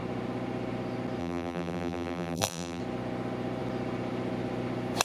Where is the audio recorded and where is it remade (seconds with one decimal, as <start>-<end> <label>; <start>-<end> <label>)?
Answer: 0.0-1.2 recorded; 1.2-2.8 remade; 2.8-5.0 recorded